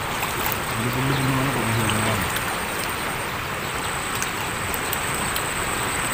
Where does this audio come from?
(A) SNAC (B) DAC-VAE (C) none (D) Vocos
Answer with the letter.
C